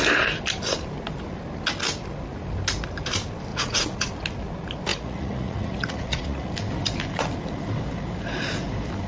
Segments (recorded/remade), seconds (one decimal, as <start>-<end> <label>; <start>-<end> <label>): 0.0-3.5 recorded; 3.5-4.1 remade; 4.1-4.9 recorded; 4.9-6.5 remade; 6.5-9.1 recorded